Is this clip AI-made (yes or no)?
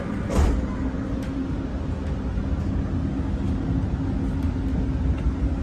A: no